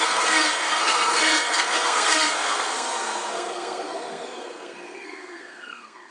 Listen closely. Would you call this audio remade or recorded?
remade